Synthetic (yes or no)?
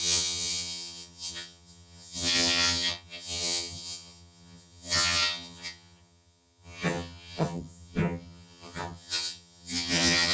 yes